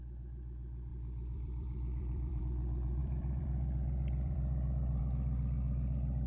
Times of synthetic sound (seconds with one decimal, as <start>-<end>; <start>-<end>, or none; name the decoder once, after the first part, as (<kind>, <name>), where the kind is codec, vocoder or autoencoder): 0.9-2.4 (vocoder, BigVGAN v2); 3.0-5.0